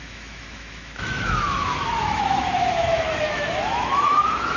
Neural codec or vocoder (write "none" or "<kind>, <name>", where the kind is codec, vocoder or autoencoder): autoencoder, DAC-VAE